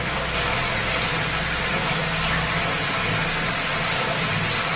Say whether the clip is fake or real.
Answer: real